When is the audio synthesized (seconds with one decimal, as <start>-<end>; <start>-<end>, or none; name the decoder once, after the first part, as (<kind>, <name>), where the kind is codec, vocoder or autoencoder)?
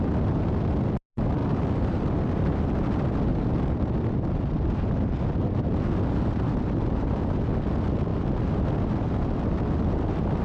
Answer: 1.4-2.6 (vocoder, BigVGAN v2); 3.3-5.8